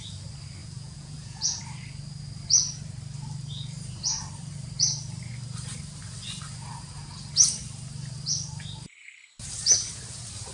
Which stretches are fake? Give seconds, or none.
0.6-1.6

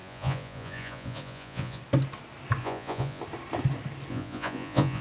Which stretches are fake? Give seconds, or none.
0.0-1.8; 2.6-3.2; 4.1-5.0

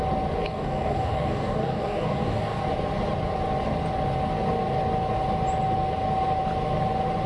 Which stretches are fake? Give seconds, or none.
0.5-2.6

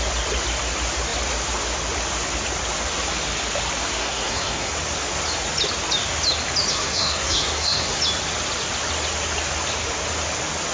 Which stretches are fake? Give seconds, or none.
4.0-4.7; 6.7-8.0

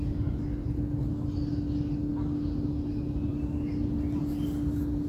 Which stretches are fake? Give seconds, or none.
none

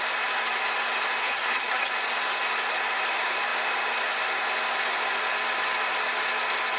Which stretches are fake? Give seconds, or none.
1.2-1.9

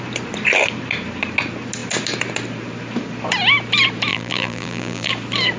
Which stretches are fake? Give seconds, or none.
4.1-5.1

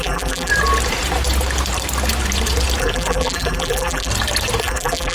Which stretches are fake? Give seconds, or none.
0.0-0.5; 2.8-4.1; 4.6-5.1